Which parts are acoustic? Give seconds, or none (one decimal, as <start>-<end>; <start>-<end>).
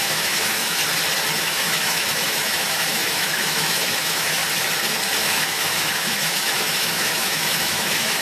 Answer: 0.8-1.4; 4.4-5.2